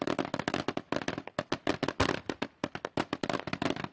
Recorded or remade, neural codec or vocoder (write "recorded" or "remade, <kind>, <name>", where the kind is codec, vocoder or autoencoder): recorded